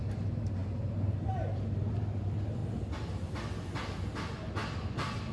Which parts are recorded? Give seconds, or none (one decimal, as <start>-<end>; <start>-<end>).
2.6-5.3